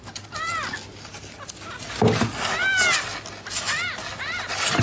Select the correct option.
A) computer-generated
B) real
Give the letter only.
B